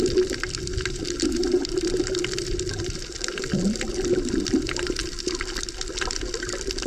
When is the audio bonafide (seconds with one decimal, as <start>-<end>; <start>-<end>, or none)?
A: 5.0-5.6